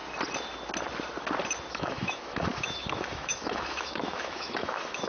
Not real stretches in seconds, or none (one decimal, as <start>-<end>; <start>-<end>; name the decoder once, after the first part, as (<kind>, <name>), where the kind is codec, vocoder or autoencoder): 1.7-5.1 (autoencoder, DAC-VAE)